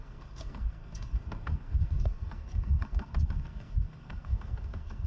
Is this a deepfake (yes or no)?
yes